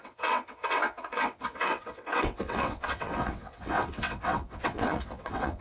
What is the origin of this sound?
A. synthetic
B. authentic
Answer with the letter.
A